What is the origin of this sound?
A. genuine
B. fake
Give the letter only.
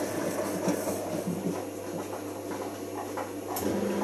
A